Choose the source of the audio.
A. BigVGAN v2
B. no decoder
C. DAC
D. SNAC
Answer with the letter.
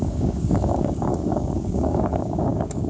C